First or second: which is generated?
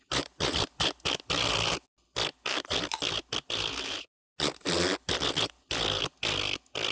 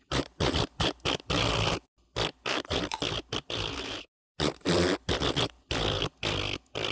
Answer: second